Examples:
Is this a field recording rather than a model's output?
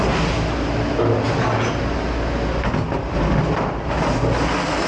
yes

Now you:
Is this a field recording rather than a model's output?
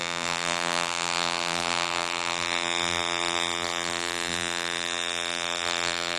no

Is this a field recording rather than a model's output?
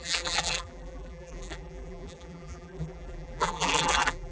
no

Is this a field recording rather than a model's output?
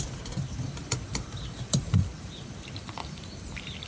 no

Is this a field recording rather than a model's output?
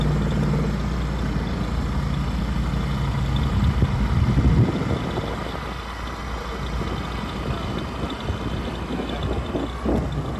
yes